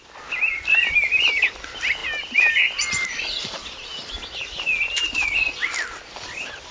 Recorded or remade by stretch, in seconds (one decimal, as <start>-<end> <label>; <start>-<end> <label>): 0.0-6.7 recorded